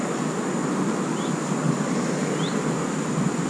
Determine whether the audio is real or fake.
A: real